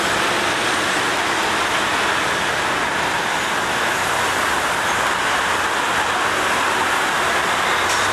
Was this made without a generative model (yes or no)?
yes